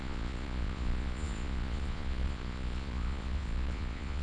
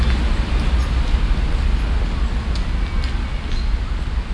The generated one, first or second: first